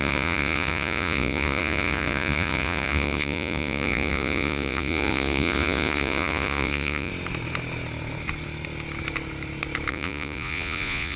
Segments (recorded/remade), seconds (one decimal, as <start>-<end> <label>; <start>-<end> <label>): 0.0-7.1 remade; 7.1-9.9 recorded; 9.9-11.2 remade